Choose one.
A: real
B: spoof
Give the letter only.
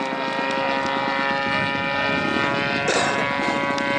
A